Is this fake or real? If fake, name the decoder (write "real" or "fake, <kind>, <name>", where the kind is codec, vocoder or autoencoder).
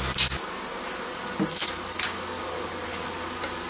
real